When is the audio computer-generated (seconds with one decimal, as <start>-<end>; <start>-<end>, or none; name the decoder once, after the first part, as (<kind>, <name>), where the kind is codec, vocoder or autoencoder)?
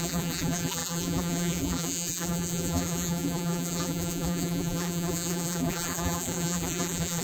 0.0-7.2 (vocoder, BigVGAN v2)